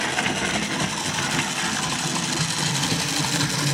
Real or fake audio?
real